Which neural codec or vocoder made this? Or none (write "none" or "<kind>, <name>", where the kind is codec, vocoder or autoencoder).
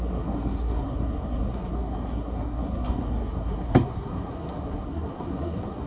codec, SNAC